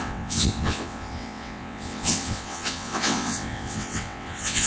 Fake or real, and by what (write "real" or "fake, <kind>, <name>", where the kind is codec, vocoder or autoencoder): fake, vocoder, WaveNeXt